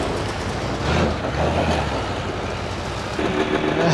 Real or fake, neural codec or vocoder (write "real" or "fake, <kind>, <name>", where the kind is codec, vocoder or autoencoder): real